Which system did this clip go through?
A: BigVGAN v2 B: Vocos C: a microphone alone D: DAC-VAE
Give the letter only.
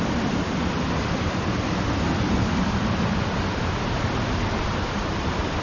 A